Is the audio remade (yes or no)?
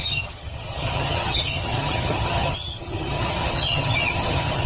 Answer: yes